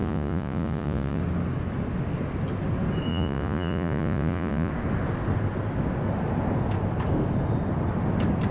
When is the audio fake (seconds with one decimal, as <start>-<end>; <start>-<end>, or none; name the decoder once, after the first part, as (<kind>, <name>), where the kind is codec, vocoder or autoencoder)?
0.0-1.2 (vocoder, Vocos); 3.1-4.7